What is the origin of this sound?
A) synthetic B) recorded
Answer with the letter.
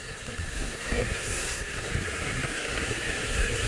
A